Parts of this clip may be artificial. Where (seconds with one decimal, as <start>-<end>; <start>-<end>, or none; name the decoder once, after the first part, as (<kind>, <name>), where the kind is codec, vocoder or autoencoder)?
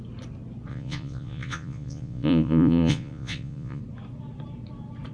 0.7-3.8 (vocoder, Vocos)